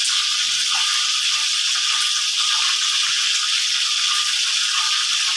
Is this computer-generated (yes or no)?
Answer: no